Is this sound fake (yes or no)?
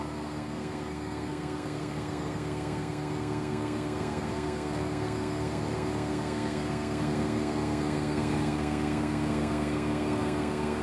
yes